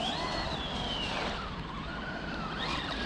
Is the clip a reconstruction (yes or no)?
no